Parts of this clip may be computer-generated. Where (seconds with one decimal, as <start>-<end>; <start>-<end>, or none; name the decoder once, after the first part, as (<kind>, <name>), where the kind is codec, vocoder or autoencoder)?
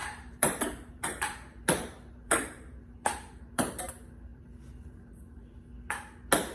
0.0-3.9 (vocoder, BigVGAN v2); 4.3-5.5